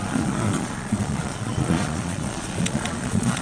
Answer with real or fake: fake